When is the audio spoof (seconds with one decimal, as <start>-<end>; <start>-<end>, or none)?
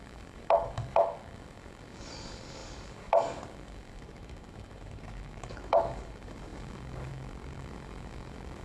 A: 0.0-8.6